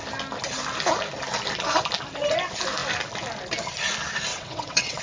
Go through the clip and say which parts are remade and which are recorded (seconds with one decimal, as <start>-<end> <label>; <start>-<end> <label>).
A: 0.0-4.3 recorded; 4.3-5.0 remade